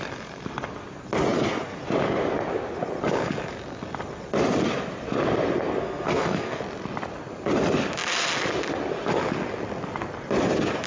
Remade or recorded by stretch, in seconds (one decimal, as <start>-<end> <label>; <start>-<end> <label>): 0.0-5.8 recorded; 5.8-6.6 remade; 6.6-10.9 recorded